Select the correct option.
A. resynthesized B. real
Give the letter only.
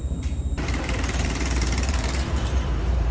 A